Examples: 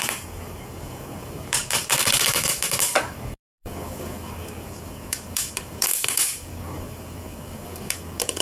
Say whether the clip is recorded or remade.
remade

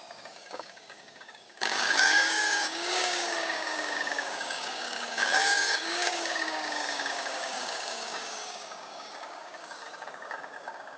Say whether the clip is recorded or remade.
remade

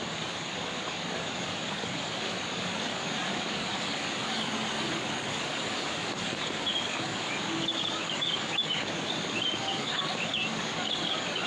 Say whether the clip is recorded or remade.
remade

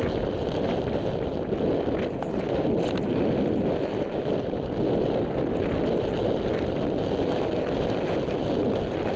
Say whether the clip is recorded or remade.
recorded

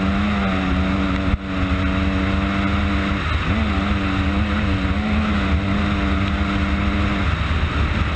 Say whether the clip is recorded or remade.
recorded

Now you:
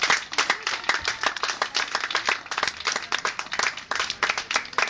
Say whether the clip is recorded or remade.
recorded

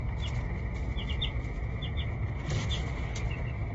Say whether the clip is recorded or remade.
recorded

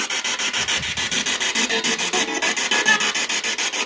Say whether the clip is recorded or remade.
recorded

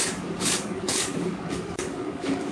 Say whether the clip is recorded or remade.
remade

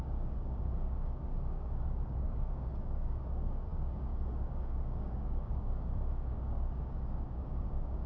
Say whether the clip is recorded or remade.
remade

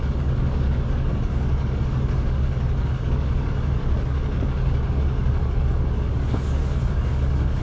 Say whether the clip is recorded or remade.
remade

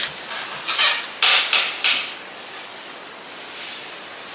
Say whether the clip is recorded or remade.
recorded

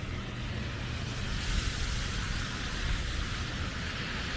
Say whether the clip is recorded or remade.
recorded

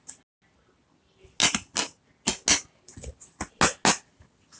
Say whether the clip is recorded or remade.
recorded